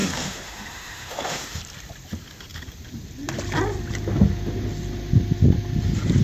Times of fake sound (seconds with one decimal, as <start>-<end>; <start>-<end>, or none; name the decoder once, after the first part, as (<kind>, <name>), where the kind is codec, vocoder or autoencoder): 0.0-1.6 (autoencoder, DAC-VAE)